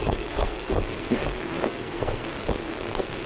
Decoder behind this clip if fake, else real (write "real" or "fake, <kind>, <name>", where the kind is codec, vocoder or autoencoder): fake, codec, SNAC